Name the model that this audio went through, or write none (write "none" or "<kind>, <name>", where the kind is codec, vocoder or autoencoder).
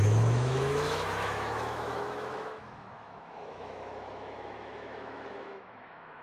autoencoder, DAC-VAE